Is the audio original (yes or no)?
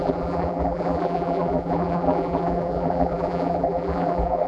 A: no